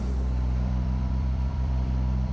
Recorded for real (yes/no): no